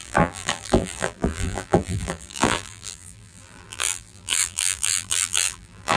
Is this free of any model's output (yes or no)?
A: no